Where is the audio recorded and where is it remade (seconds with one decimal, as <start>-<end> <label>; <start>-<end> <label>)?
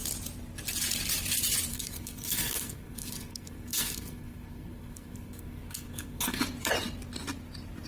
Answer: 0.0-1.7 recorded; 1.7-6.4 remade; 6.4-7.9 recorded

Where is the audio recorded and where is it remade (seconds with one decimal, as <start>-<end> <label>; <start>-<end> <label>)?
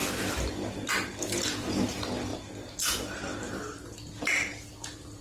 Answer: 0.0-4.5 recorded; 4.5-5.2 remade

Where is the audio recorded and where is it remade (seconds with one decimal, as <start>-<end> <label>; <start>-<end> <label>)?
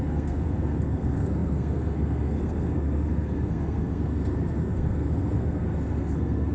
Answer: 0.0-6.5 remade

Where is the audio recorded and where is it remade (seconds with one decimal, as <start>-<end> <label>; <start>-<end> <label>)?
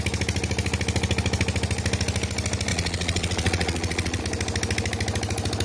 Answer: 0.0-2.7 recorded; 2.7-4.2 remade; 4.2-5.6 recorded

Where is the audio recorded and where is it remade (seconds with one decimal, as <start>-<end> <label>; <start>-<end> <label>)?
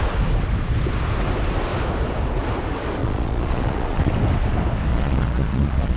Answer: 0.0-3.0 recorded; 3.0-4.1 remade; 4.1-4.9 recorded; 4.9-6.0 remade